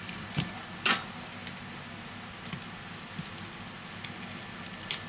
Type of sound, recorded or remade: recorded